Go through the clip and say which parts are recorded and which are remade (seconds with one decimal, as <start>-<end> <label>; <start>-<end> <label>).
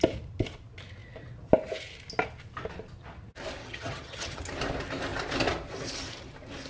0.0-3.6 recorded; 3.6-4.4 remade; 4.4-6.7 recorded